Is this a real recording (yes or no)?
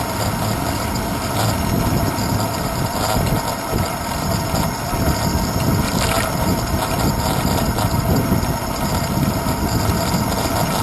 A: yes